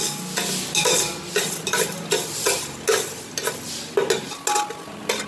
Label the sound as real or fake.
real